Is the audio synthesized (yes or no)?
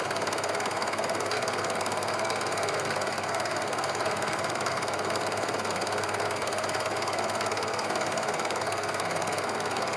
yes